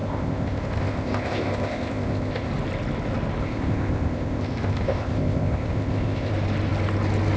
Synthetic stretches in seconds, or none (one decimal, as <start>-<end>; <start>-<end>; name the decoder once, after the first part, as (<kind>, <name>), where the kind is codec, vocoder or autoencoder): 0.0-2.5 (codec, ZipCodec); 3.4-6.3